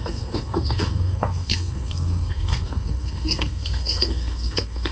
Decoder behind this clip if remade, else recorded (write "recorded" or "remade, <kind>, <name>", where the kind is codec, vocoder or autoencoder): remade, codec, SNAC